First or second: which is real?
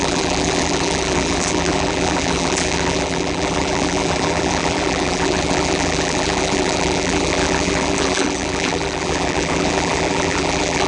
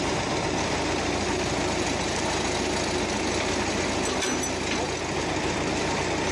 second